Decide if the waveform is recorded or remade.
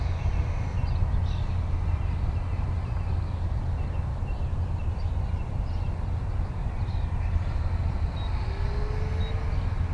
recorded